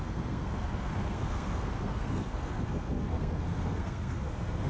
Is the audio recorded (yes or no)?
no